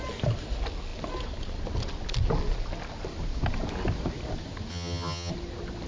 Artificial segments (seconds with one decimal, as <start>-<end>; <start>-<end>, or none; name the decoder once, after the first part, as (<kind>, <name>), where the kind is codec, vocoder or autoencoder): 4.7-5.3 (vocoder, HiFi-GAN)